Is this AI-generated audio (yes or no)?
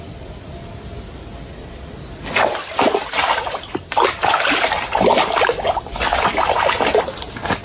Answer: no